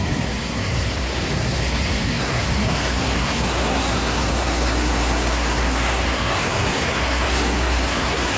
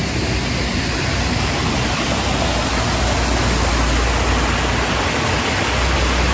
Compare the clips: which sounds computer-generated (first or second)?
first